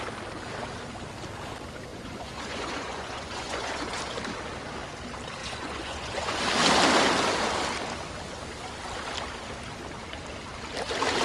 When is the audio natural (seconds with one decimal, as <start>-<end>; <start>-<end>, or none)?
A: 0.0-1.9; 4.0-5.4; 6.4-11.2